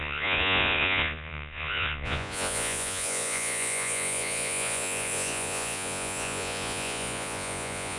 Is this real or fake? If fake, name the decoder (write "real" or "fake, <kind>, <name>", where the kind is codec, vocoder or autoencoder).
fake, vocoder, Vocos